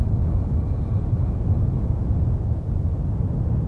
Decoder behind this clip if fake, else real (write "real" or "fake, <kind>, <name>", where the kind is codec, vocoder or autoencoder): real